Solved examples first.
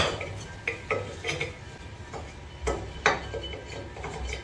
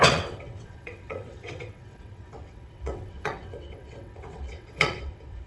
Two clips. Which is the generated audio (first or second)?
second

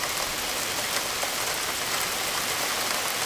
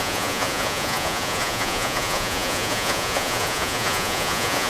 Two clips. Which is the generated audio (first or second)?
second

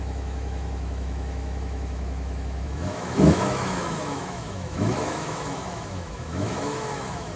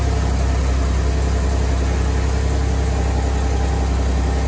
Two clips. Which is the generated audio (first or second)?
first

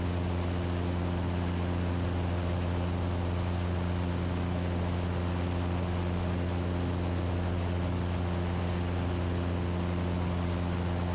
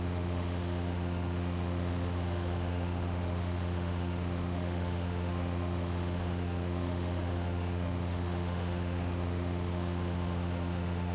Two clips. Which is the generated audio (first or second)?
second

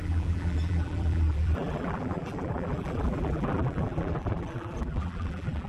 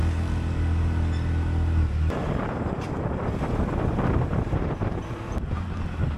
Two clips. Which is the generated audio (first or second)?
first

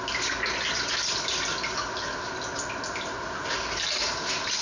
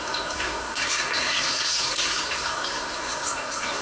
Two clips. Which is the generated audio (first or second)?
second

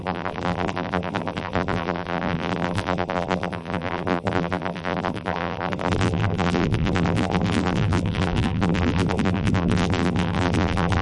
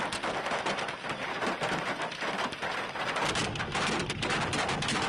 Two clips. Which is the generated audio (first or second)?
first